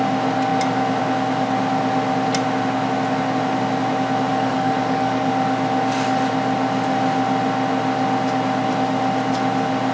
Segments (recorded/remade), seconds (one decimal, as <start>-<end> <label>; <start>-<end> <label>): 0.0-4.3 recorded; 4.3-5.3 remade; 5.3-9.9 recorded